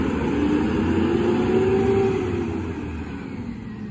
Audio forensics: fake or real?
real